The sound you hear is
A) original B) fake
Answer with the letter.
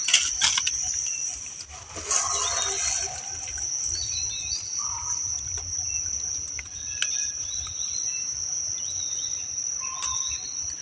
A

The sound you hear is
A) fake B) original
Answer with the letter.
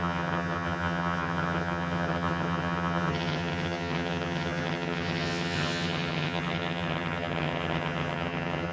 A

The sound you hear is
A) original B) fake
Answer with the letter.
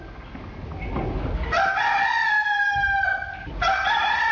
A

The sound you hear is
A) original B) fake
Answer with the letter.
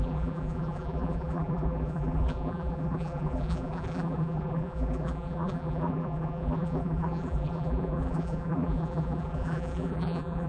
B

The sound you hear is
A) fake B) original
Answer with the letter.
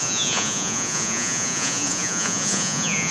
A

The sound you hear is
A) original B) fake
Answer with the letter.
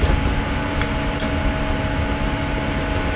A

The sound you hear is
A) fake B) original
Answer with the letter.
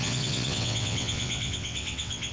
A